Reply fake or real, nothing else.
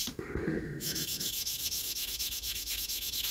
fake